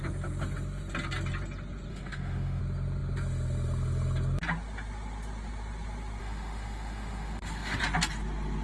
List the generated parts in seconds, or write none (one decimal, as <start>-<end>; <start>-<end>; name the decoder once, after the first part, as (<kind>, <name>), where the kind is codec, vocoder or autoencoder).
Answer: 1.9-2.6 (autoencoder, DAC-VAE); 6.2-7.8